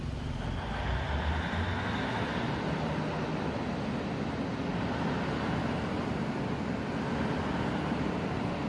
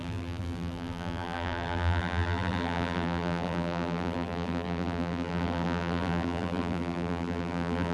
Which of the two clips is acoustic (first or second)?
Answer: first